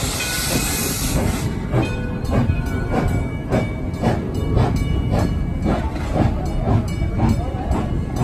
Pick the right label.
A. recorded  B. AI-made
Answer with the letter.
A